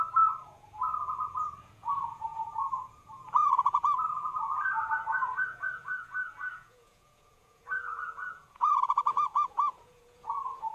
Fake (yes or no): yes